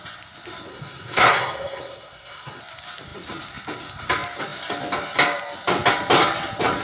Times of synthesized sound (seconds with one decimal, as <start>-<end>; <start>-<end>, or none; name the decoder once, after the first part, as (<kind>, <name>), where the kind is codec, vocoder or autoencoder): 0.7-2.6 (codec, SNAC)